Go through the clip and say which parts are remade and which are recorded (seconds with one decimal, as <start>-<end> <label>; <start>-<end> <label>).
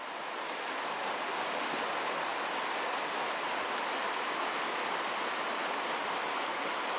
0.0-7.0 recorded